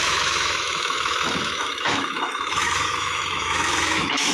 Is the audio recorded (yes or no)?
no